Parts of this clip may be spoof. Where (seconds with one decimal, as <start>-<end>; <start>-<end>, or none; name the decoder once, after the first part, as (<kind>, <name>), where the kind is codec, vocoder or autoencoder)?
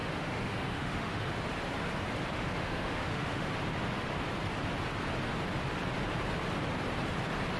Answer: 0.0-1.3 (autoencoder, DAC-VAE); 2.3-3.5